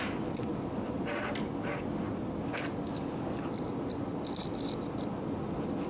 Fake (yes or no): no